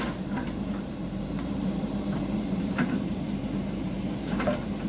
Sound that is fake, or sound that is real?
fake